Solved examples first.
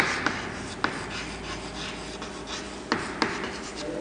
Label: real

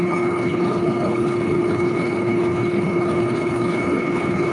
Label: fake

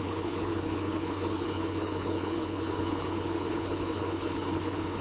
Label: fake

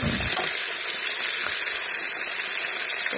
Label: real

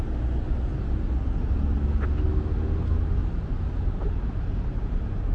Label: real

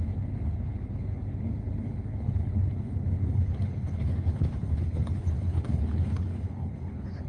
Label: fake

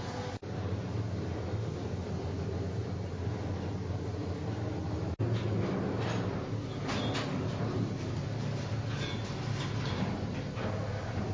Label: real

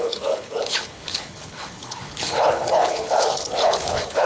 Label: fake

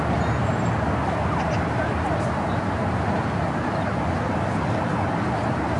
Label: real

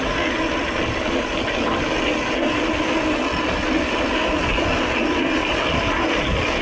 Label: real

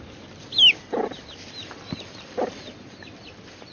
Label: real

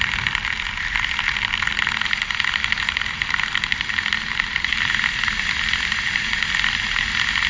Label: real